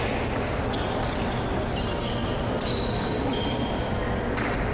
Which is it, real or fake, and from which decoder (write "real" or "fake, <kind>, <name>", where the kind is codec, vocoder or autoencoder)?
real